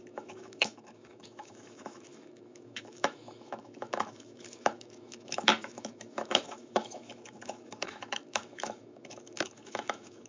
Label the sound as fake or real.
fake